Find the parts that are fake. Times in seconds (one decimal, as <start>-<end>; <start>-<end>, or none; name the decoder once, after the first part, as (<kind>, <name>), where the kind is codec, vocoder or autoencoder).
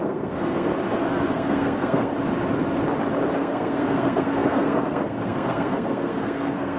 0.0-0.7 (codec, SNAC); 1.3-2.1; 3.4-6.8